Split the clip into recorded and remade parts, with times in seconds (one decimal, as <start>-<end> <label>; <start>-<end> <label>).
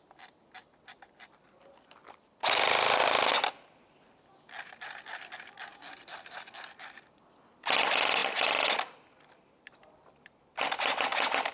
0.0-0.6 recorded; 0.6-3.0 remade; 3.0-8.2 recorded; 8.2-11.5 remade